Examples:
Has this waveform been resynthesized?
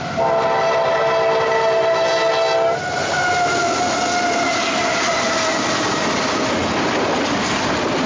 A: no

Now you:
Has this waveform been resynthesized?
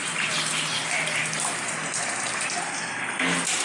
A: no